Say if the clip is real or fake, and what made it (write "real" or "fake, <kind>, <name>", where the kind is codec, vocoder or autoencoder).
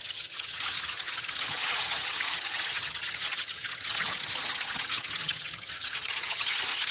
fake, vocoder, HiFi-GAN